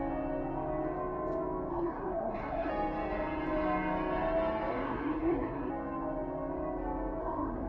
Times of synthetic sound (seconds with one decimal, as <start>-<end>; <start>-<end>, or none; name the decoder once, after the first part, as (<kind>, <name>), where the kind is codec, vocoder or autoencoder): 1.7-2.7 (codec, SNAC); 4.7-5.7; 7.2-7.7